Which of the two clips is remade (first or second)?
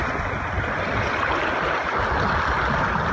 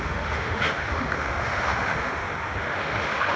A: second